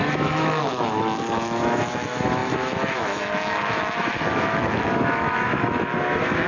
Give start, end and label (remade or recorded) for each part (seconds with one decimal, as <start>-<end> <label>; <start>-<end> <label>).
0.0-6.5 remade